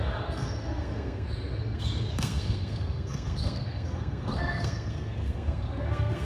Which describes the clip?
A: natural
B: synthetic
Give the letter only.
B